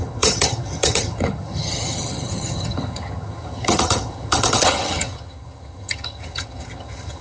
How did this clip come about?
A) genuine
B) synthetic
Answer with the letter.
B